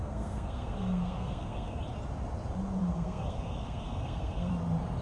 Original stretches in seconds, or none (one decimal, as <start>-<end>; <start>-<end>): 1.8-2.8; 4.5-5.0